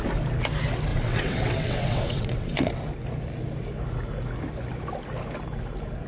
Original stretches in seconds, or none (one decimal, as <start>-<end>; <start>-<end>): 0.0-0.9; 2.7-6.1